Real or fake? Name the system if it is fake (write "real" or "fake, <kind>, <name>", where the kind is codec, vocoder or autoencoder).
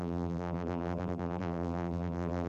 fake, vocoder, BigVGAN v2